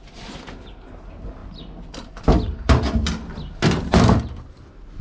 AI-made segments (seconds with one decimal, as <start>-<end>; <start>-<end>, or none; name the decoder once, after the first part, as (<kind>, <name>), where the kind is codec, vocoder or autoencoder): none